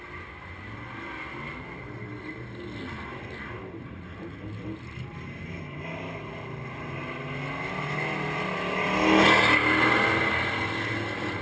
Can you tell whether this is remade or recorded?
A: recorded